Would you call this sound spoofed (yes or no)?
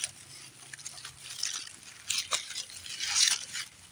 no